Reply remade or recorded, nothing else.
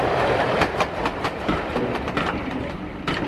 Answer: recorded